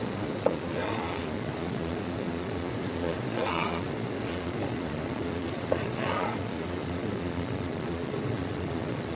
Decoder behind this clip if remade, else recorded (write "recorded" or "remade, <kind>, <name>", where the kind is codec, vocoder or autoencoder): remade, vocoder, Vocos